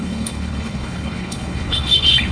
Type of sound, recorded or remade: remade